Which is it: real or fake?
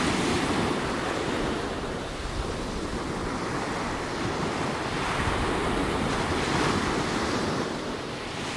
real